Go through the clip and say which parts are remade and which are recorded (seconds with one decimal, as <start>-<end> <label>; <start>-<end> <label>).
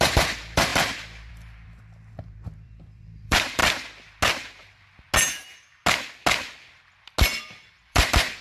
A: 0.0-0.7 remade; 0.7-1.3 recorded; 1.3-3.6 remade; 3.6-7.4 recorded; 7.4-8.4 remade